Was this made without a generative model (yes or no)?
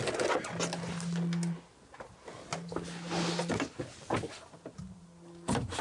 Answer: yes